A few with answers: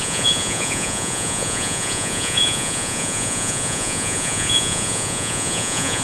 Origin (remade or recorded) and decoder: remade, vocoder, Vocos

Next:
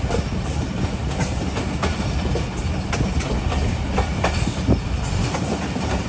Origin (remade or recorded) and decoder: recorded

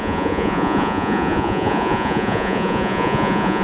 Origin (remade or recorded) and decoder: remade, vocoder, Vocos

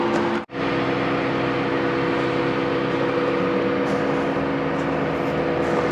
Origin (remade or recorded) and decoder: recorded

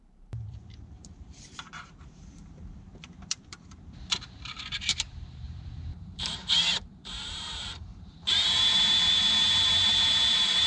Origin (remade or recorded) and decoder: remade, vocoder, BigVGAN v2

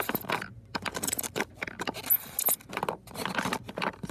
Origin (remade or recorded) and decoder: recorded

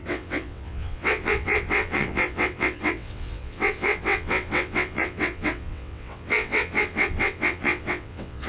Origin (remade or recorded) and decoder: remade, vocoder, WaveNeXt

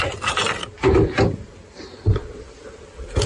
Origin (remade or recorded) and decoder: recorded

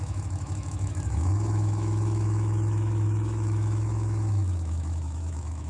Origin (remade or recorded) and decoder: remade, autoencoder, DAC-VAE